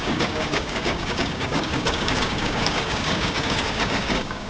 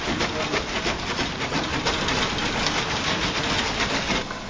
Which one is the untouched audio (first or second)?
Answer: second